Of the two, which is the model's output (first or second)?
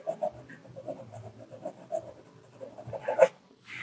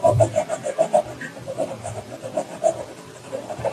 second